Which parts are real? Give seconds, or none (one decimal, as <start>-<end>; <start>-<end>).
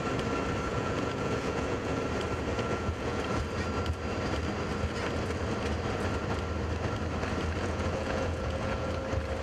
0.0-0.7; 2.0-2.5; 3.4-7.6; 9.0-9.4